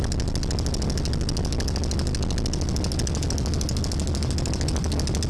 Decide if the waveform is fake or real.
real